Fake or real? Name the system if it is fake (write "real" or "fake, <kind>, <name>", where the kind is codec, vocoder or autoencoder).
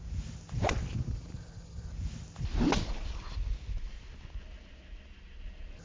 real